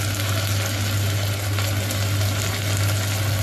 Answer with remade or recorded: recorded